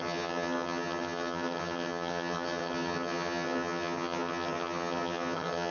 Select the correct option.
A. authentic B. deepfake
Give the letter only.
B